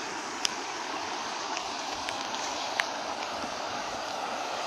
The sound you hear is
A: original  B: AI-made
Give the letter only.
B